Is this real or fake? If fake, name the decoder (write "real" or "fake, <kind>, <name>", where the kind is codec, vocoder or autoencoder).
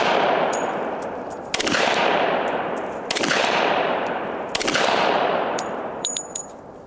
fake, vocoder, BigVGAN v2